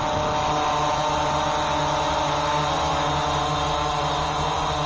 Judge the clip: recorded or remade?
recorded